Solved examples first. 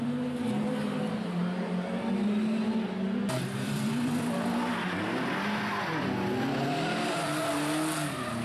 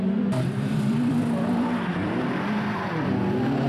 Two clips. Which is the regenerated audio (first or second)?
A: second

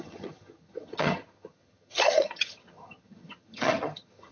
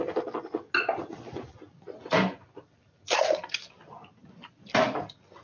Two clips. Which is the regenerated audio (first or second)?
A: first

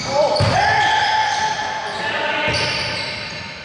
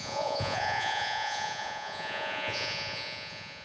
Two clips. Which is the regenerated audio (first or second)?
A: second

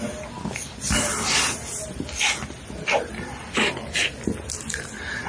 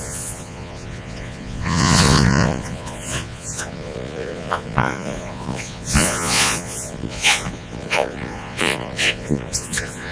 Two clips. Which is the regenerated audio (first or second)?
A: second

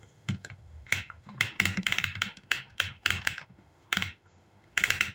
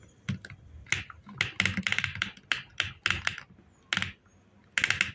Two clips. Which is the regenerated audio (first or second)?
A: first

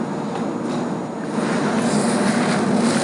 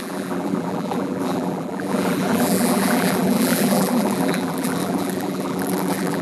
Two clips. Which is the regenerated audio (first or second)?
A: second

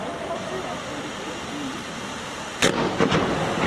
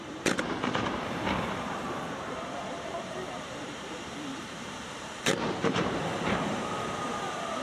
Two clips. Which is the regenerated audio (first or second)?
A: second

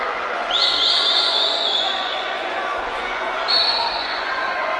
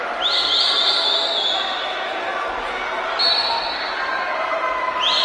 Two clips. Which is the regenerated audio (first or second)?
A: first